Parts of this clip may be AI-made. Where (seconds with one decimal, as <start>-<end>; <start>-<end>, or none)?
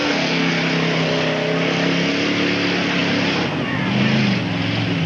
0.0-0.5